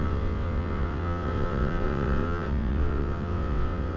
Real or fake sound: fake